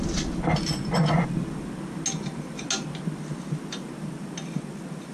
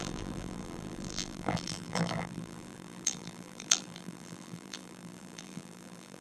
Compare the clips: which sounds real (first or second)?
first